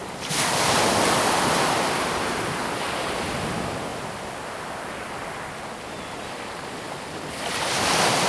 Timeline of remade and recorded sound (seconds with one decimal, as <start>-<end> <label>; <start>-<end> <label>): 0.0-8.3 recorded